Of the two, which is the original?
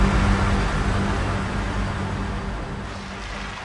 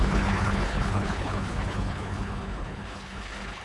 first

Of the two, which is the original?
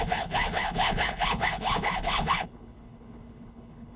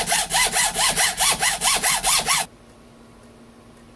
second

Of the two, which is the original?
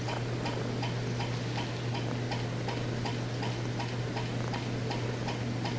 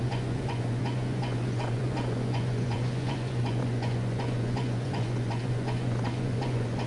first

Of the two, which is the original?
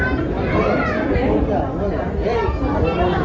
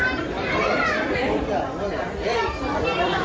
first